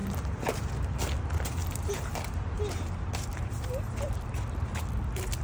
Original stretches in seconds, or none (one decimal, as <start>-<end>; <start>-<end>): 0.7-1.6; 4.8-5.4